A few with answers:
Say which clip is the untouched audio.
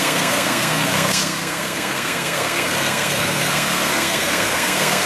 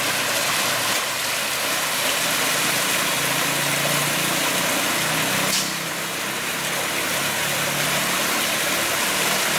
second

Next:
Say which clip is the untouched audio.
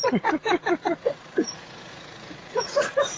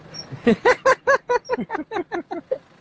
second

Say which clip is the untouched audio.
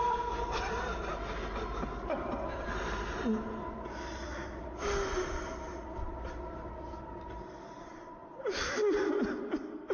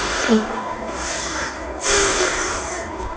first